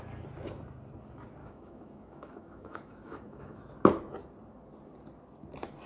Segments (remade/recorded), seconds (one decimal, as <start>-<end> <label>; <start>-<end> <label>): 0.0-1.4 recorded; 1.4-3.7 remade; 3.7-5.9 recorded